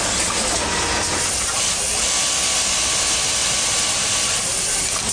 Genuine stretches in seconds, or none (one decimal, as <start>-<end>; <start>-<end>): 0.0-3.4; 4.1-5.1